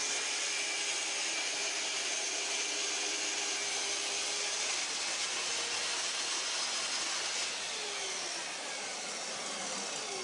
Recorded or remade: recorded